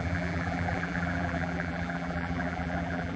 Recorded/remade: remade